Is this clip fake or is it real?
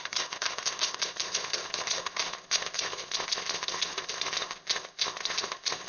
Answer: fake